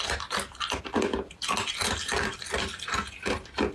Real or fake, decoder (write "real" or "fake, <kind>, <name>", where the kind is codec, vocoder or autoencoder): real